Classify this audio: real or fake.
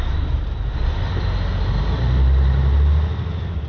real